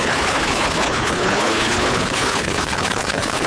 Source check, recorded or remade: remade